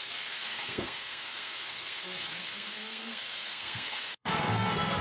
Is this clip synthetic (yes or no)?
yes